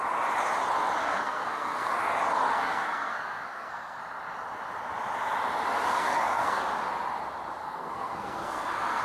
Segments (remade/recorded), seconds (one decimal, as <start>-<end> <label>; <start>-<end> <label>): 0.0-1.0 recorded; 1.0-1.9 remade; 1.9-2.5 recorded; 2.5-4.0 remade; 4.0-5.9 recorded; 5.9-6.6 remade; 6.6-7.6 recorded; 7.6-9.0 remade